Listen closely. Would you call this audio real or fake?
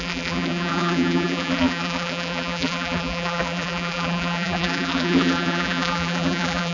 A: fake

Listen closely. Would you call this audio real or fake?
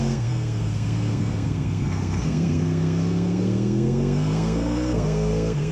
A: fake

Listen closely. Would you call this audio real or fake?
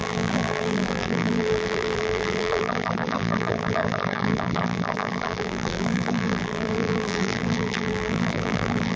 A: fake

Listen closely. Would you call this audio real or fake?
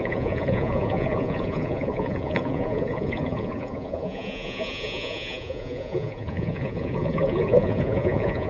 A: fake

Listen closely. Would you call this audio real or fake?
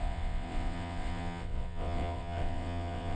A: fake